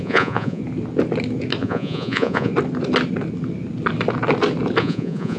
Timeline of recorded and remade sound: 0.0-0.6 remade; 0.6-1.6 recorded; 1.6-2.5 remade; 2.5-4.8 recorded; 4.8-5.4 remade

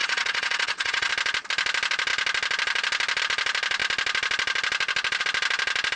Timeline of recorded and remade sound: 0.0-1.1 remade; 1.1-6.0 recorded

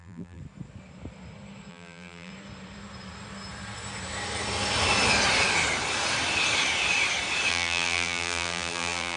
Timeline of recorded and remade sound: 0.0-0.4 remade; 0.4-1.7 recorded; 1.7-2.3 remade; 2.3-7.5 recorded; 7.5-9.2 remade

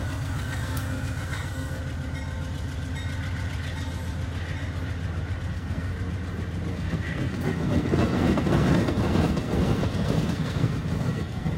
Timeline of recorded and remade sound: 0.0-1.8 remade; 1.8-5.5 recorded; 5.5-5.9 remade; 5.9-6.7 recorded; 6.7-11.6 remade